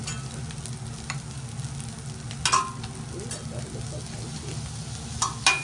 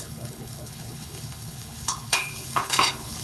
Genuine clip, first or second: first